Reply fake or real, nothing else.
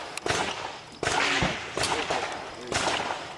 real